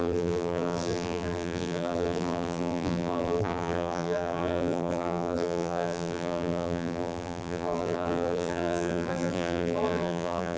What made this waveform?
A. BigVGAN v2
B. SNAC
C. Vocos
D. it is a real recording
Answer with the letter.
A